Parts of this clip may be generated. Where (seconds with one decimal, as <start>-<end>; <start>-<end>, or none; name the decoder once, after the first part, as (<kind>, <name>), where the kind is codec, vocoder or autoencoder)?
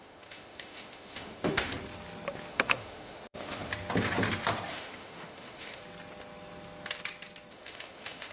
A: 0.0-1.7 (autoencoder, DAC-VAE); 2.5-3.7; 4.7-5.8; 7.5-8.3